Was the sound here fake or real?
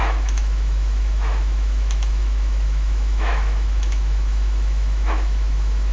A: fake